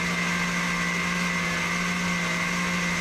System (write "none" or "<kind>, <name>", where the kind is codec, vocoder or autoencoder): none